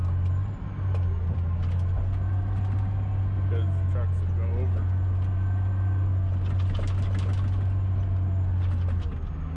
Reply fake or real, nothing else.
real